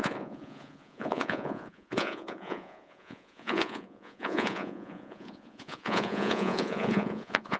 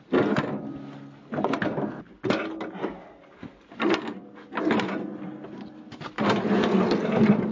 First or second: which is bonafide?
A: second